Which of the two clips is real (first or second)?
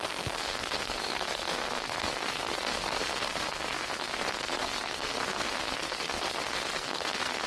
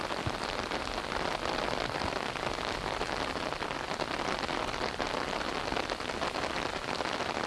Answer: second